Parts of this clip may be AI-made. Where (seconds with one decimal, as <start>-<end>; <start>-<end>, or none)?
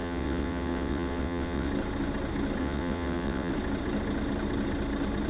0.0-1.7; 2.6-3.5